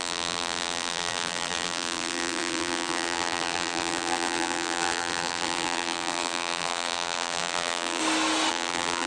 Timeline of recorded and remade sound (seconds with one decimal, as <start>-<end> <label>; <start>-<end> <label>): 0.0-8.0 remade; 8.0-8.5 recorded; 8.5-9.1 remade